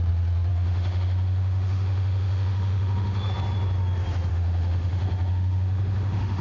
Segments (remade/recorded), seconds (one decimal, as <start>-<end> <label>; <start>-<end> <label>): 0.0-0.5 recorded; 0.5-3.3 remade; 3.3-4.3 recorded; 4.3-6.4 remade